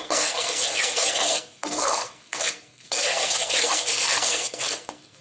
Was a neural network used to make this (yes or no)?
yes